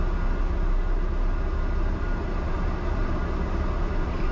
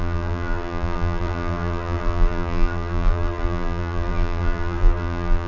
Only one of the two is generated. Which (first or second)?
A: second